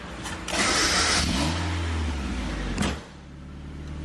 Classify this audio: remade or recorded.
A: recorded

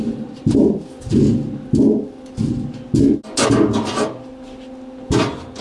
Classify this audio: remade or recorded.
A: recorded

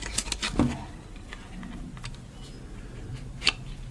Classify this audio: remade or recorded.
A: recorded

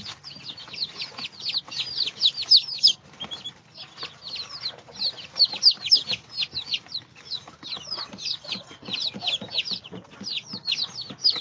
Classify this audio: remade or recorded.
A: recorded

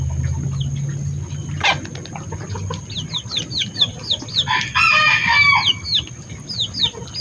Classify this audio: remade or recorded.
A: recorded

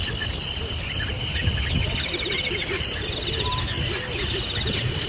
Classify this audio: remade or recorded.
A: recorded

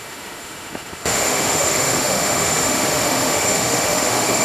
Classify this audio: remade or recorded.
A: remade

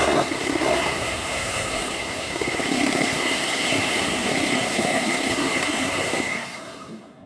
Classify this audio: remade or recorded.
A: remade